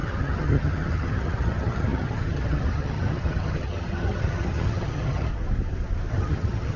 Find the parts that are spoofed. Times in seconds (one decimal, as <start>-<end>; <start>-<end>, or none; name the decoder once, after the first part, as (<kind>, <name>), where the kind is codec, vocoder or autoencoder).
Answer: 0.0-5.3 (vocoder, HiFi-GAN); 6.1-6.8